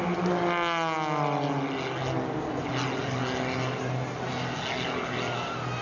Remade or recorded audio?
recorded